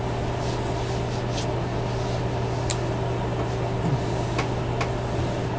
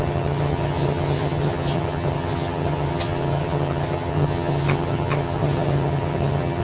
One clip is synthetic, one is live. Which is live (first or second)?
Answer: first